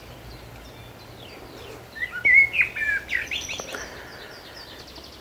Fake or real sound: real